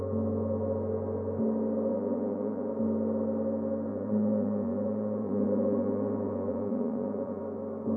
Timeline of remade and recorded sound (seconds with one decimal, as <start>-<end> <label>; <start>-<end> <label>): 0.0-1.9 recorded; 1.9-2.7 remade; 2.7-3.9 recorded; 3.9-7.4 remade; 7.4-8.0 recorded